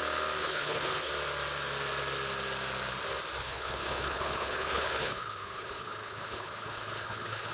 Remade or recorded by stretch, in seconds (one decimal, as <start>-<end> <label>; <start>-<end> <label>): 0.0-0.4 recorded; 0.4-1.1 remade; 1.1-3.4 recorded; 3.4-7.5 remade